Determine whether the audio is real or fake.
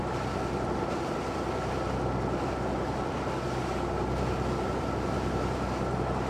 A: real